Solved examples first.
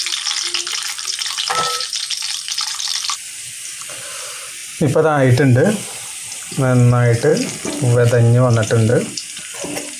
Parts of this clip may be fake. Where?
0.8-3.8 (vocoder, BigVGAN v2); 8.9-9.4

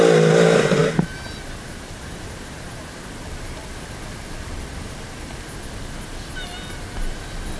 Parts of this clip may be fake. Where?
none

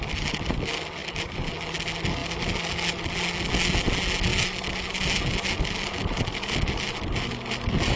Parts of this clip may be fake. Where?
1.0-1.5 (vocoder, BigVGAN v2)

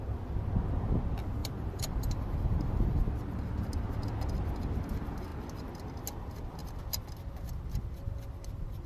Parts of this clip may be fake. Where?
1.4-3.1 (vocoder, BigVGAN v2)

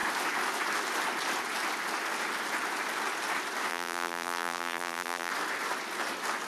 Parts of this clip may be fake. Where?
3.7-5.3 (vocoder, BigVGAN v2)